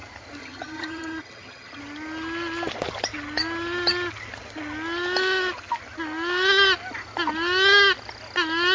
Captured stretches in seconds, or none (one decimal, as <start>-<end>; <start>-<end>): 0.0-0.4; 1.8-8.7